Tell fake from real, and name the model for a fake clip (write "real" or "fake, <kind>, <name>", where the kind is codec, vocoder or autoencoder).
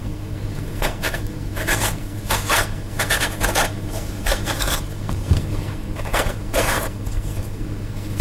fake, codec, SNAC